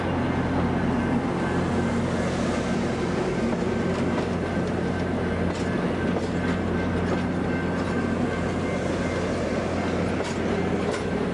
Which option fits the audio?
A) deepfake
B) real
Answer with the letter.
B